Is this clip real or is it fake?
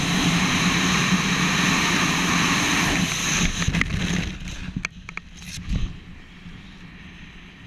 real